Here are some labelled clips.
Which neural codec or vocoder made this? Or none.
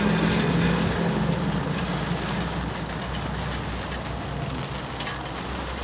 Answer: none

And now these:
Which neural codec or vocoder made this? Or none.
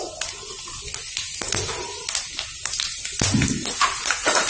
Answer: none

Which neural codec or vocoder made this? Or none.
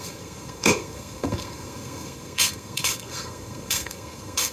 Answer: codec, SNAC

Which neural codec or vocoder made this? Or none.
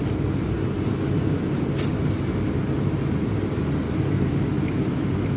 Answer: none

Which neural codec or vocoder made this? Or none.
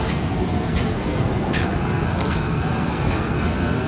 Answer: codec, SNAC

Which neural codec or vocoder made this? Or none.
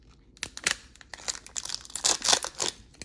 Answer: none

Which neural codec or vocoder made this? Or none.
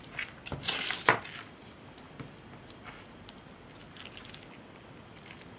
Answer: none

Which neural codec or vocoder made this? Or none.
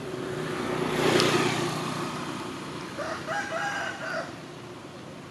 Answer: vocoder, BigVGAN v2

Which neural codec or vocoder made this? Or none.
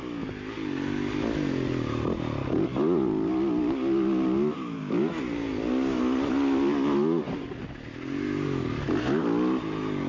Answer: none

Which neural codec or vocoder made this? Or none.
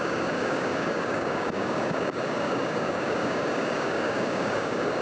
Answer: codec, DAC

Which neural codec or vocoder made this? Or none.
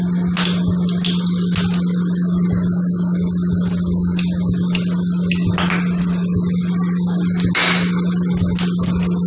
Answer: none